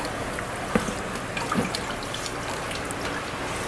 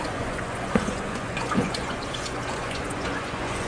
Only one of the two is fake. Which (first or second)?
second